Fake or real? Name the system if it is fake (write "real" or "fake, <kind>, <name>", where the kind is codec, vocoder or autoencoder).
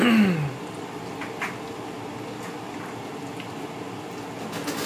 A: real